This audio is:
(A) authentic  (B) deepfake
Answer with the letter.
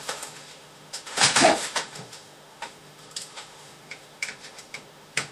B